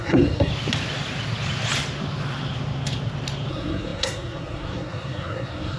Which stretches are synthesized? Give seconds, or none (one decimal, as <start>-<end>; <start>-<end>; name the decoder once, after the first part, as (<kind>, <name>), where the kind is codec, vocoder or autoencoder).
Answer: 0.0-0.5 (codec, SNAC); 3.5-5.8